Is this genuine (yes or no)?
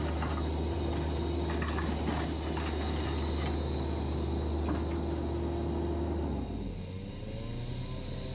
yes